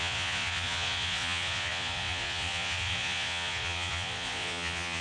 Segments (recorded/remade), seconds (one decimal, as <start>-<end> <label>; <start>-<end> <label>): 0.0-5.0 remade